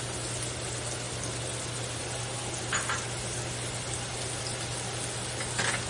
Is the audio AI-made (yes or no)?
no